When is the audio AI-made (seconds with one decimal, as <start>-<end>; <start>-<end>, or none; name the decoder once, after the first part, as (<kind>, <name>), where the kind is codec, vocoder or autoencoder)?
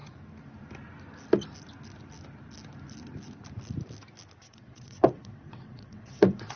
4.4-6.6 (vocoder, WaveNeXt)